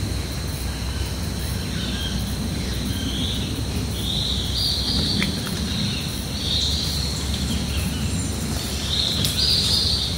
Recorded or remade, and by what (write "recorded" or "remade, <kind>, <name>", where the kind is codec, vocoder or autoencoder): recorded